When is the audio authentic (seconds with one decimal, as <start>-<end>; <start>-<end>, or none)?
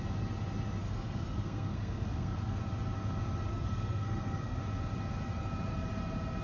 0.0-0.8; 2.6-3.5; 4.6-6.4